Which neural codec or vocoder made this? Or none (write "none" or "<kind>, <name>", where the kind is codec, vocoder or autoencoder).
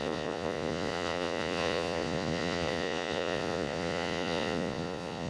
vocoder, Vocos